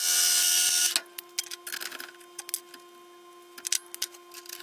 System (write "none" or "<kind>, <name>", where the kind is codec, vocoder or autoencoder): none